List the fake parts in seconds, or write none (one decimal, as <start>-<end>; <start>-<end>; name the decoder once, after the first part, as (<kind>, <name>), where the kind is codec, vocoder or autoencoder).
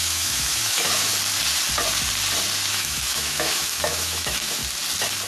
0.0-1.1 (autoencoder, DAC-VAE); 2.7-4.6